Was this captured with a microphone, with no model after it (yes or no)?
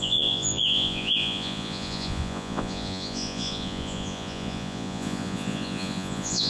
no